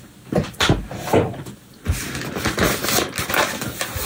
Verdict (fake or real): real